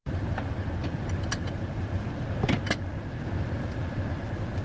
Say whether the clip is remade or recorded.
recorded